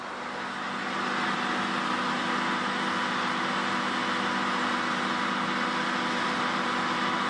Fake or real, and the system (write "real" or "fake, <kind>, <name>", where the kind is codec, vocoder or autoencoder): real